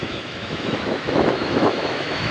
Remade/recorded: remade